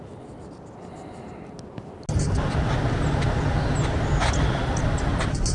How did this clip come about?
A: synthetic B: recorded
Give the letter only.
B